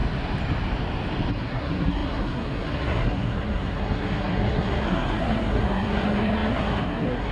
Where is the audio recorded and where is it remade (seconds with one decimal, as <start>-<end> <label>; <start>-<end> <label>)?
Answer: 0.0-1.3 recorded; 1.3-7.3 remade